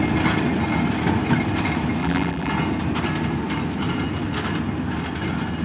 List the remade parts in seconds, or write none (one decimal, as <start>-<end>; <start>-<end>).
2.0-2.5